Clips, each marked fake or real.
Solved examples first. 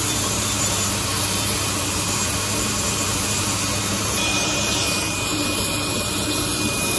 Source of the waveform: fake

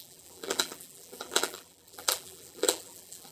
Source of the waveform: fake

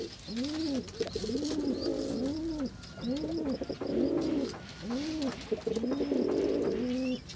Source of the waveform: real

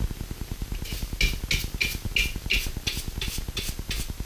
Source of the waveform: real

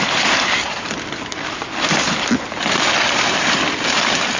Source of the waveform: real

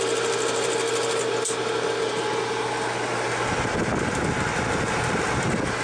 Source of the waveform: real